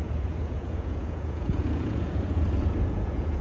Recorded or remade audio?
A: remade